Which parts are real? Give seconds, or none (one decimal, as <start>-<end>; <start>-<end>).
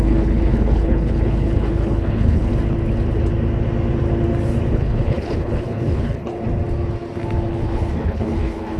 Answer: 2.5-4.7; 6.3-7.5